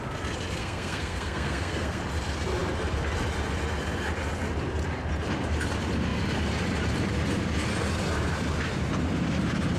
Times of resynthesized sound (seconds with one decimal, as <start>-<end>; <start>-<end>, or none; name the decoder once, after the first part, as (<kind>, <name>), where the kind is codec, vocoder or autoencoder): 0.6-2.0 (codec, SNAC)